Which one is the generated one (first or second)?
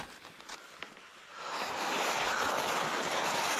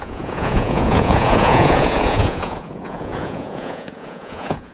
second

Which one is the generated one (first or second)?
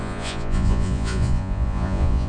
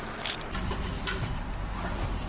first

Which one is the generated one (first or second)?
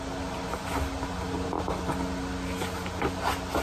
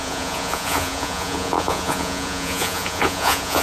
second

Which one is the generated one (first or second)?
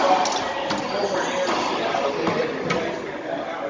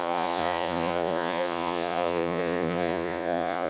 second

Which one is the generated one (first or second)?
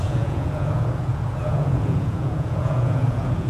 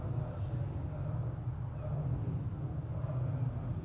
first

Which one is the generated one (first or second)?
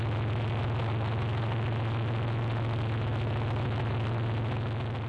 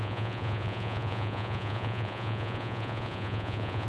second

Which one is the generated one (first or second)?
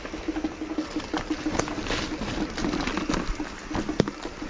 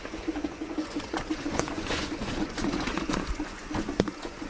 second